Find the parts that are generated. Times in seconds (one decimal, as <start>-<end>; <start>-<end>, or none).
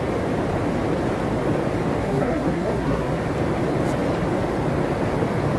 2.0-3.2